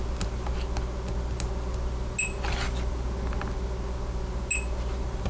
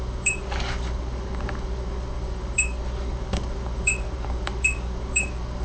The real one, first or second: first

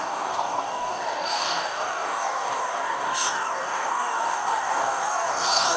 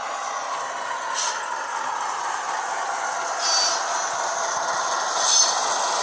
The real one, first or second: second